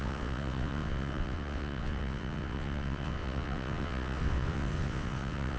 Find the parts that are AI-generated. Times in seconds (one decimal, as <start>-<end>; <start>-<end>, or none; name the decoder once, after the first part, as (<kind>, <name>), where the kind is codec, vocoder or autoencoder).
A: 0.0-5.6 (vocoder, WaveNeXt)